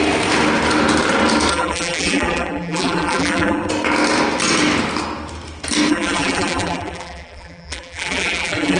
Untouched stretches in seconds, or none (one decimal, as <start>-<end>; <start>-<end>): 0.0-1.5; 3.7-5.9